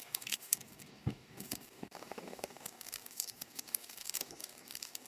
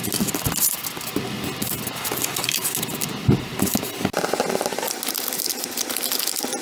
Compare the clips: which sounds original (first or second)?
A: second